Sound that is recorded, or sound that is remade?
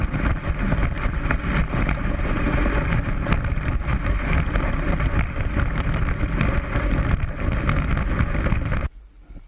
recorded